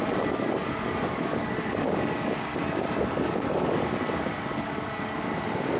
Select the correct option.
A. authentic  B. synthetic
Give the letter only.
B